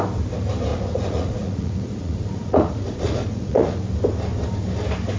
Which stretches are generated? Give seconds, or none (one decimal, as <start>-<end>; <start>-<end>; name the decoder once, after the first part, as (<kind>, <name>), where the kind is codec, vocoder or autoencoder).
0.7-3.8 (vocoder, Vocos)